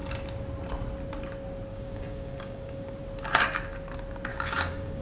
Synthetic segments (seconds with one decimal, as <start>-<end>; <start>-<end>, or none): 1.7-3.0; 4.3-5.0